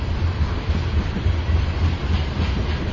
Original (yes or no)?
yes